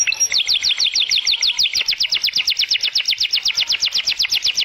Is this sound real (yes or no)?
yes